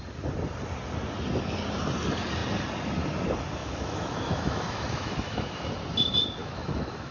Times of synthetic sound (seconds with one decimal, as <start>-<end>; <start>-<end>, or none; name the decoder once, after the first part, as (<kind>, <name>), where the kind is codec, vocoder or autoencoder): 3.6-5.7 (autoencoder, DAC-VAE); 6.4-7.1